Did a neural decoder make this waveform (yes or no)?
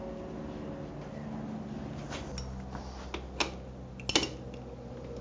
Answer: no